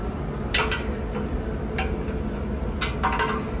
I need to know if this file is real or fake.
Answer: real